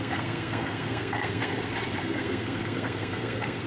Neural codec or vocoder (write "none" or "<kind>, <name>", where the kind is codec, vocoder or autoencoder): codec, SNAC